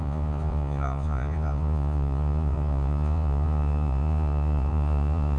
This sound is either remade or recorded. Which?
remade